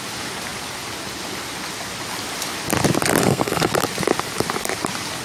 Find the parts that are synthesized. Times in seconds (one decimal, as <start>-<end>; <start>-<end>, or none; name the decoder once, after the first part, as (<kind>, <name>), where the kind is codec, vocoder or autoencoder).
3.2-3.7 (codec, SNAC)